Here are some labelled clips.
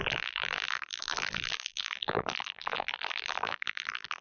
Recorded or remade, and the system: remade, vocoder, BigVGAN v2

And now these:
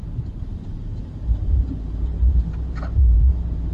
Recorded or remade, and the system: remade, vocoder, BigVGAN v2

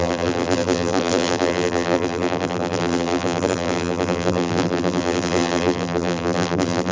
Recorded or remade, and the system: remade, vocoder, BigVGAN v2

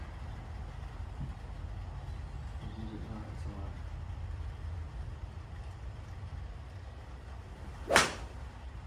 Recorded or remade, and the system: recorded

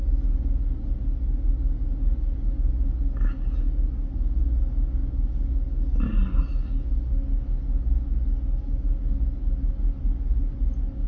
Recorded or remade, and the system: recorded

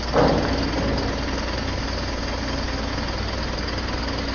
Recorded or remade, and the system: recorded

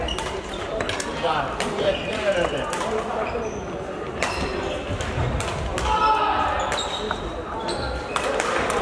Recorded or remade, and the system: recorded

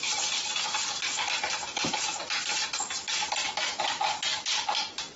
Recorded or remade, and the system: recorded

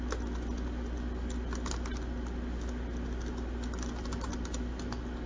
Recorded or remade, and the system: recorded